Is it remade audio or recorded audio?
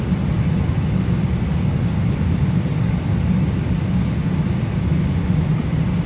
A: recorded